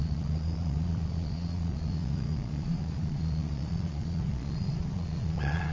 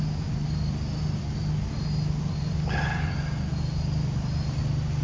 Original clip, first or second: second